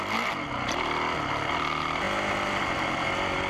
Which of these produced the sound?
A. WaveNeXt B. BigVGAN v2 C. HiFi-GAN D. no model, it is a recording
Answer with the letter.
D